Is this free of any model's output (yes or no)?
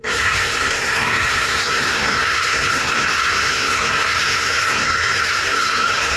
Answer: no